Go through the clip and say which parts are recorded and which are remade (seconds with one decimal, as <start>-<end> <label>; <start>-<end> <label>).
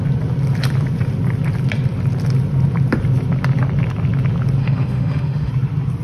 0.0-4.6 recorded; 4.6-5.5 remade; 5.5-6.0 recorded